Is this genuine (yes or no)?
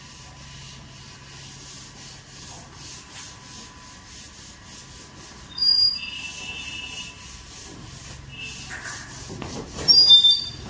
yes